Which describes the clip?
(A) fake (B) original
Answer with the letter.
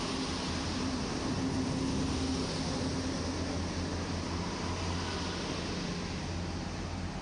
B